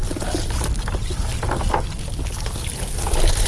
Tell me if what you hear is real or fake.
real